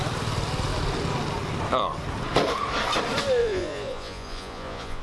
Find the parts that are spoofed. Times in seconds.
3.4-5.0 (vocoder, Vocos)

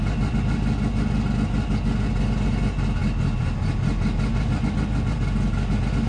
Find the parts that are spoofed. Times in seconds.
none

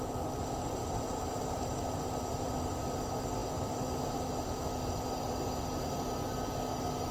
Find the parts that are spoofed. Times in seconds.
0.8-1.8 (vocoder, BigVGAN v2)

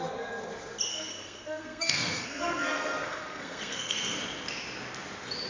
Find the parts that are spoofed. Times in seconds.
0.9-4.2 (codec, SNAC)

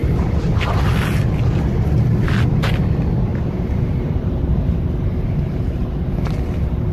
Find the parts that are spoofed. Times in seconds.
3.3-6.1 (vocoder, BigVGAN v2)